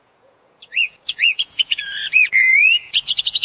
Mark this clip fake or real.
fake